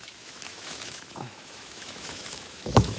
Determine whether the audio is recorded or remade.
remade